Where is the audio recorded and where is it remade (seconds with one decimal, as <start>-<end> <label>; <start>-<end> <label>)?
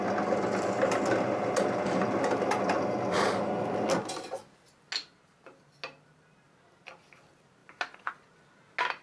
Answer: 0.0-7.6 recorded; 7.6-8.1 remade; 8.1-9.0 recorded